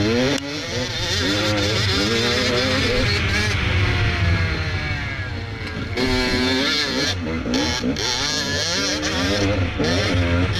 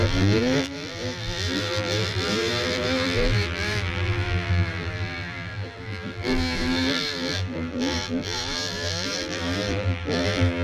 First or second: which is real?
first